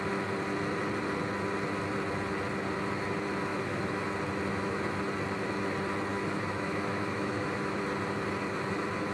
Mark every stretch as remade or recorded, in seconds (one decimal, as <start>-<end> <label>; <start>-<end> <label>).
0.0-3.5 recorded; 3.5-4.0 remade; 4.0-4.5 recorded; 4.5-5.0 remade; 5.0-6.1 recorded; 6.1-7.8 remade; 7.8-9.1 recorded

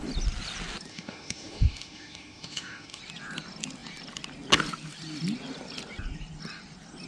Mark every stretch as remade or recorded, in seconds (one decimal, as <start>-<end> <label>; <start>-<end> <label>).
0.0-0.9 recorded; 0.9-3.0 remade; 3.0-7.1 recorded

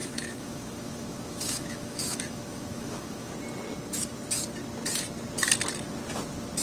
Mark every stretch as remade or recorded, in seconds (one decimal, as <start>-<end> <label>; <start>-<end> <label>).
0.0-3.3 remade; 3.3-6.6 recorded

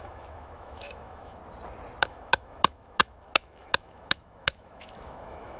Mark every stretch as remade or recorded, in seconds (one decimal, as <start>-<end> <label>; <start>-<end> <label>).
0.0-1.4 remade; 1.4-2.0 recorded; 2.0-5.6 remade